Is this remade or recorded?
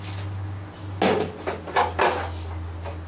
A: recorded